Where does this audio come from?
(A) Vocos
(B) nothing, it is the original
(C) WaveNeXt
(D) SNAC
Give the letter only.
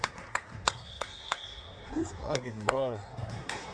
D